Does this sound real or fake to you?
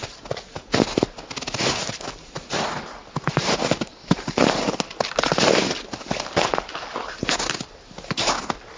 real